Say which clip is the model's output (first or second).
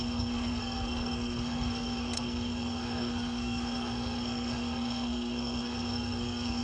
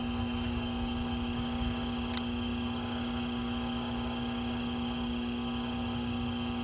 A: first